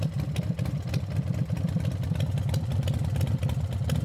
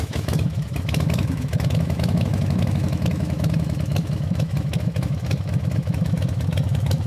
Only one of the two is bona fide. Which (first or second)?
first